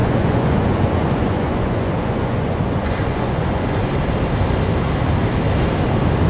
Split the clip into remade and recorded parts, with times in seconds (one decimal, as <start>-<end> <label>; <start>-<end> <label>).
0.0-3.8 remade; 3.8-6.3 recorded